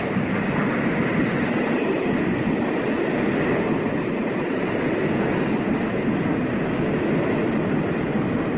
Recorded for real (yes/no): yes